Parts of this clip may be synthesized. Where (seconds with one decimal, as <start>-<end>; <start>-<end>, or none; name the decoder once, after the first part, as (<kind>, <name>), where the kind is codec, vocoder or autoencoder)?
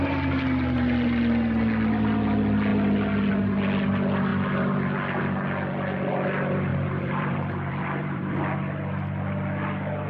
6.7-8.4 (vocoder, BigVGAN v2)